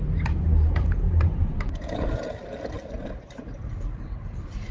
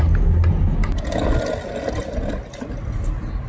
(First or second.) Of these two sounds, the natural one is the second